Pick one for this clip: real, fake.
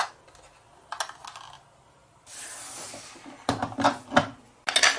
real